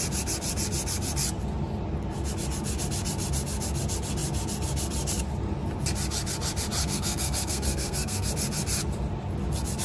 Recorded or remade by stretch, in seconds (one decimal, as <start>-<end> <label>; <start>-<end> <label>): 0.0-6.8 recorded; 6.8-8.3 remade; 8.3-9.8 recorded